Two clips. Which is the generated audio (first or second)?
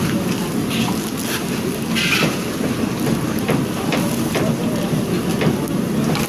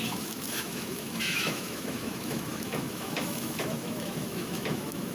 second